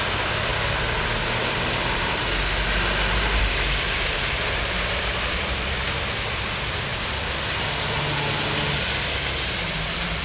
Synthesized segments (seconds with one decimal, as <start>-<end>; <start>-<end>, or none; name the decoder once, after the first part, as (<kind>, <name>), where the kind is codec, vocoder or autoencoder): 0.0-0.5 (vocoder, BigVGAN v2); 1.5-2.2; 3.4-6.9; 9.7-10.2